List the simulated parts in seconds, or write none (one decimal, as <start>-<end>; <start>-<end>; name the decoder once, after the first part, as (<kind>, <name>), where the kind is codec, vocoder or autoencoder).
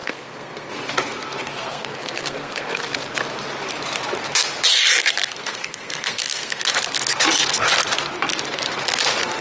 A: 0.0-0.7 (codec, SNAC); 1.4-2.9; 5.0-6.7